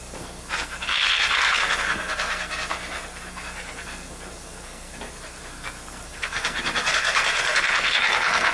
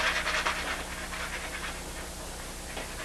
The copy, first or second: first